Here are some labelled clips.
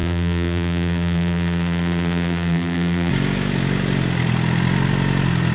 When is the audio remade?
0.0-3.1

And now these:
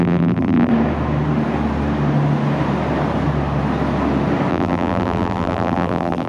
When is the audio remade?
0.0-0.7; 4.5-6.3

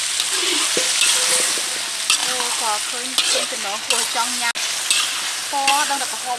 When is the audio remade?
none